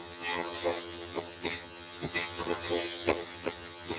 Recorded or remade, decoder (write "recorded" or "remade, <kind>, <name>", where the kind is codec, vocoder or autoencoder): remade, vocoder, HiFi-GAN